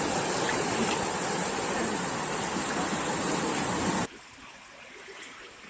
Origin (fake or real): real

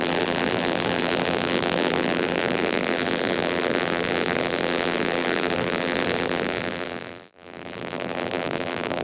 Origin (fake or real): fake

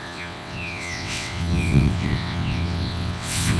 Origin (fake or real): fake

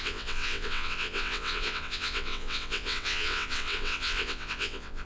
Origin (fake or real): fake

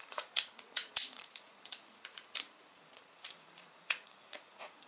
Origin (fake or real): fake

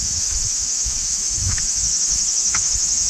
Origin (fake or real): fake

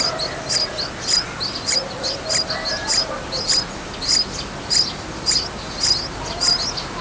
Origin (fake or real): real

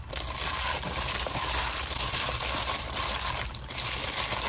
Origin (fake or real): real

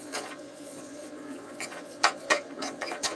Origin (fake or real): fake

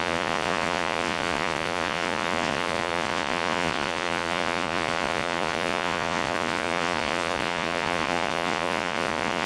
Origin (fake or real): fake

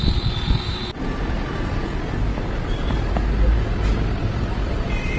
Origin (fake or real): real